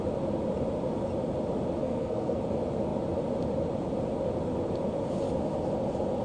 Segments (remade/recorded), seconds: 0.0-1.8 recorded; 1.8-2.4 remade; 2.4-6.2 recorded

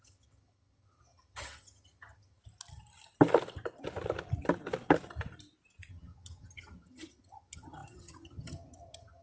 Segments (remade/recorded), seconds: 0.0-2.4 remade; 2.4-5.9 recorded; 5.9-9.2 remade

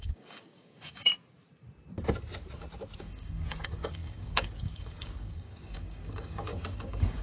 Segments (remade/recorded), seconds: 0.0-1.1 remade; 1.1-3.0 recorded; 3.0-7.2 remade

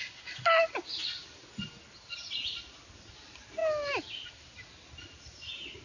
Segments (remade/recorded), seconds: 0.0-5.8 recorded

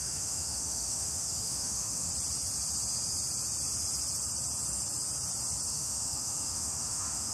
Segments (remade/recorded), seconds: 0.0-2.1 remade; 2.1-5.7 recorded; 5.7-7.3 remade

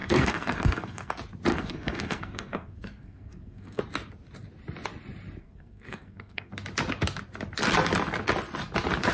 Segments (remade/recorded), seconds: 0.0-1.1 remade; 1.1-1.5 recorded; 1.5-3.8 remade; 3.8-5.4 recorded; 5.4-6.5 remade; 6.5-9.1 recorded

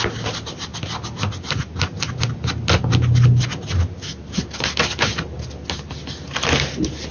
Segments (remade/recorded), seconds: 0.0-7.1 recorded

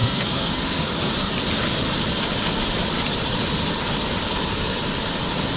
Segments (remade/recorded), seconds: 0.0-1.3 remade; 1.3-5.6 recorded